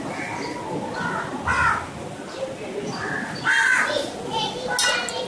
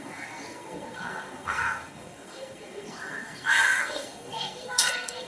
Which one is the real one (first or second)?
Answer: first